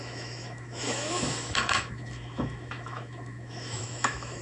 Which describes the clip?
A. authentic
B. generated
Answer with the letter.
B